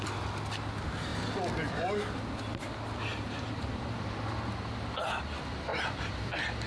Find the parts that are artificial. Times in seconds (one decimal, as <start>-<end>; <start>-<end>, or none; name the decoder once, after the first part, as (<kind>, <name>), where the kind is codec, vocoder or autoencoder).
3.1-4.3 (vocoder, BigVGAN v2); 5.7-6.3